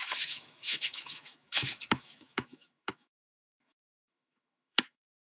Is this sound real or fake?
fake